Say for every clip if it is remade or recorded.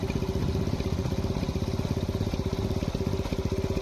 recorded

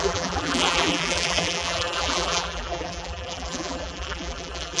remade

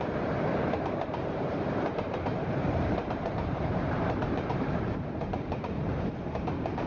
remade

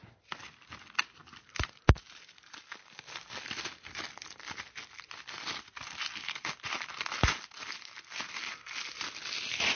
recorded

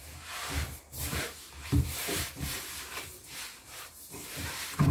remade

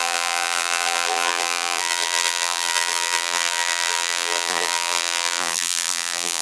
remade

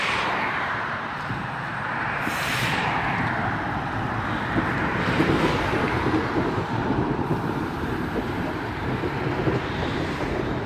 remade